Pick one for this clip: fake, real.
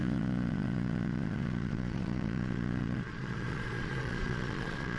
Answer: fake